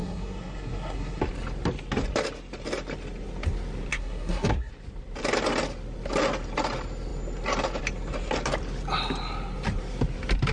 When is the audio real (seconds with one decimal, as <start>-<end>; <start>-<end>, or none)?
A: 1.2-3.9; 4.7-10.5